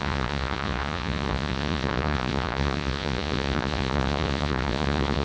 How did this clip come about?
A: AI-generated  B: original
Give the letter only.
A